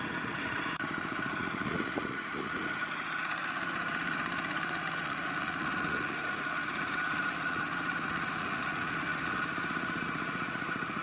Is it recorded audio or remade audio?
remade